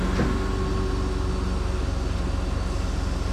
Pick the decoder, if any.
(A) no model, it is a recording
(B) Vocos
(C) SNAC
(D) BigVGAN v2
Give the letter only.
A